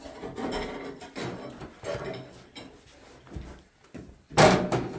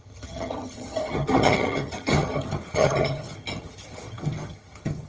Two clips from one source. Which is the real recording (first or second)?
first